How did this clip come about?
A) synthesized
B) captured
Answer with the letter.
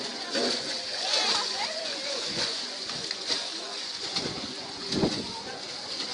A